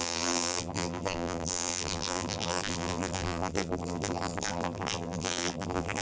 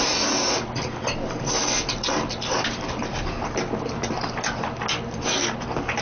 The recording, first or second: second